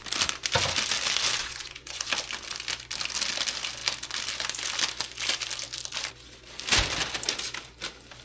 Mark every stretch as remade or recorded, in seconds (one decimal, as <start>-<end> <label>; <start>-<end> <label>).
0.0-1.4 recorded; 1.4-2.1 remade; 2.1-8.2 recorded